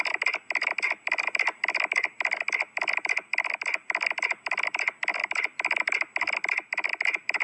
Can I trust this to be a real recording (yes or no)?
yes